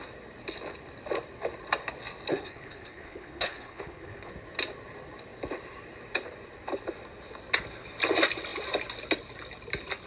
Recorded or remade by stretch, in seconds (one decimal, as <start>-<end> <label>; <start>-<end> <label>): 0.0-2.3 recorded; 2.3-4.3 remade; 4.3-10.1 recorded